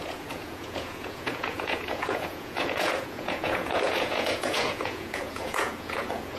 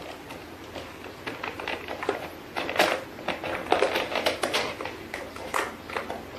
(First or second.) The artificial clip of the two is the first